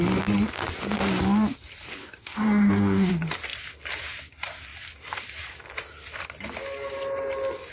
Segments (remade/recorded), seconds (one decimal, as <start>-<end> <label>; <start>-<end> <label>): 0.0-2.0 recorded; 2.0-3.1 remade; 3.1-7.7 recorded